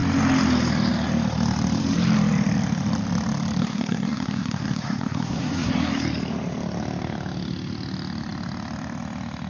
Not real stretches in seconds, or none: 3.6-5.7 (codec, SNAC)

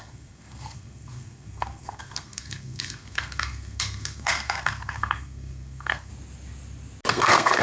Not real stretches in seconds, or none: 0.0-6.1 (codec, SNAC); 7.1-7.6

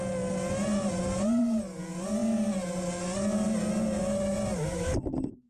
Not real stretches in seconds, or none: none

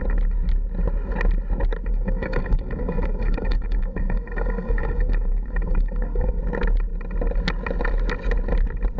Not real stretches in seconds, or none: 1.9-6.4 (codec, SNAC)

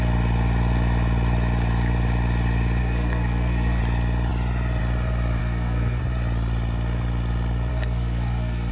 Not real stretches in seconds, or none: 2.8-3.8 (codec, SNAC); 5.4-6.0; 7.7-8.7